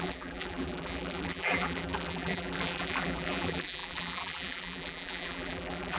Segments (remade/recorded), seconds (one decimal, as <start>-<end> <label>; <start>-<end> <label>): 0.0-6.0 remade